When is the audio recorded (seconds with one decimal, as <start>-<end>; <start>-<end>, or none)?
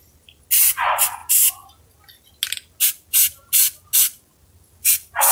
0.0-5.3